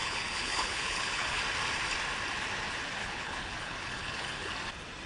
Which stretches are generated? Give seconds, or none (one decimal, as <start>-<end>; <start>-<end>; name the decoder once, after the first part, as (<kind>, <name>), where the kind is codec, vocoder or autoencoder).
0.0-1.4 (codec, HILCodec); 3.0-4.5